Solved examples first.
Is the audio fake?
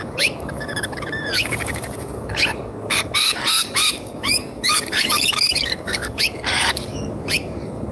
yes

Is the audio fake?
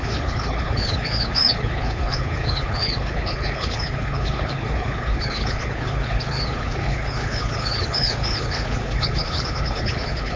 yes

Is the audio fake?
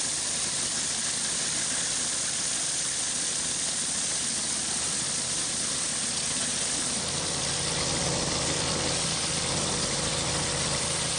no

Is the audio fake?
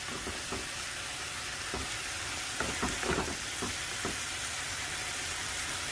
no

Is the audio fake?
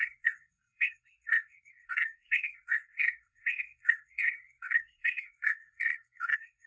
yes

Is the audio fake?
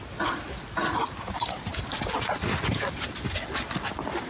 no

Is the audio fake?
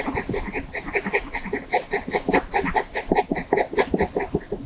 no